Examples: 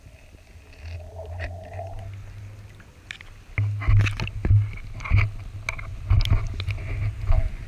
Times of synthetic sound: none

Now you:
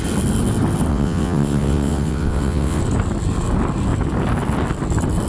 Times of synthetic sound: 0.9-2.8 (vocoder, WaveNeXt)

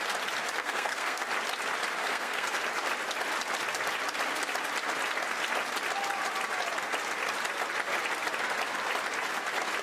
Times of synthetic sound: 0.6-1.2 (codec, SNAC); 2.0-2.6